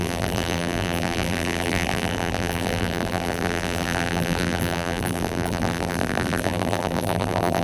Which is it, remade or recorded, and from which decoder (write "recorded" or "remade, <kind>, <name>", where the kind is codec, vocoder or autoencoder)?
remade, vocoder, BigVGAN v2